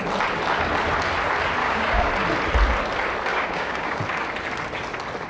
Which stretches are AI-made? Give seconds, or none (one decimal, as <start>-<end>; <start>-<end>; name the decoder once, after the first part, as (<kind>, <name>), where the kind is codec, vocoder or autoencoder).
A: 1.6-2.1 (codec, DAC); 3.3-4.0